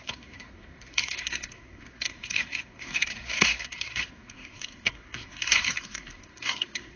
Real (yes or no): no